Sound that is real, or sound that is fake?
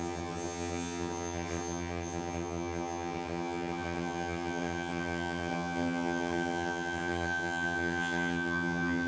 fake